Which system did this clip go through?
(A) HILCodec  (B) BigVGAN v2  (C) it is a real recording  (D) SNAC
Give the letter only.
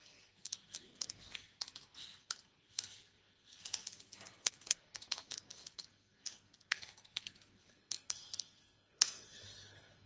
D